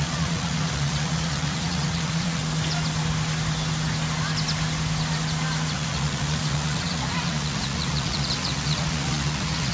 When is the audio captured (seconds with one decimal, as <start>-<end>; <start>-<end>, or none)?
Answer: 2.4-5.7